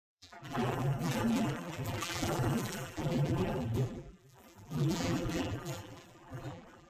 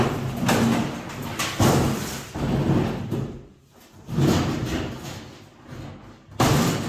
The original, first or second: second